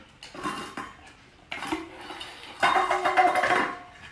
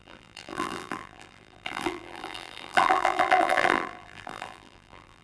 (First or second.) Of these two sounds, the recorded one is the first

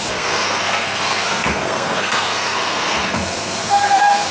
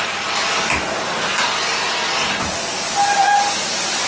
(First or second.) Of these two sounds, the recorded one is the second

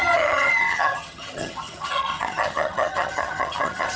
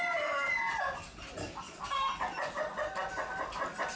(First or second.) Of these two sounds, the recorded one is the second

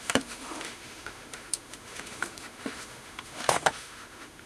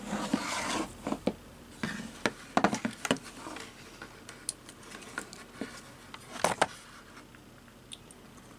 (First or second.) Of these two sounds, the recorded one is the second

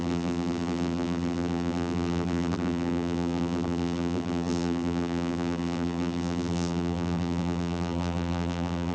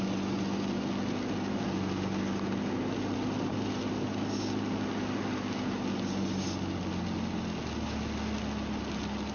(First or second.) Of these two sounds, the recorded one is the second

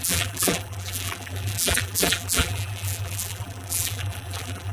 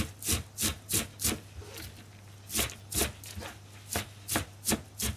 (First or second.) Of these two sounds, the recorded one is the second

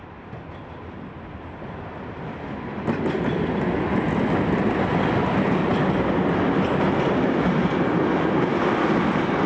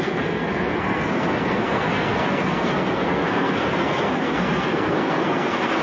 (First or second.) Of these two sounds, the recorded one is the first